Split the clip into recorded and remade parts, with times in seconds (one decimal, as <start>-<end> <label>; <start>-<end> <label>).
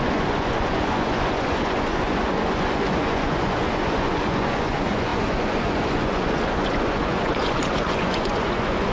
0.0-8.9 remade